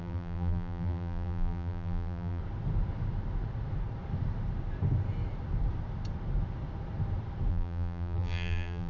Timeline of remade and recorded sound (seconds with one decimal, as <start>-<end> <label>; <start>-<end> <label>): 0.0-2.4 remade; 2.4-7.5 recorded; 7.5-8.9 remade